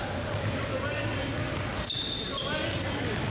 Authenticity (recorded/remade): recorded